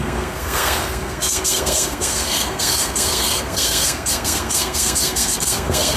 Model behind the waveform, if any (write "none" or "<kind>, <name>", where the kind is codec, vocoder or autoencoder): codec, SNAC